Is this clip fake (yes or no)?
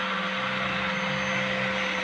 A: no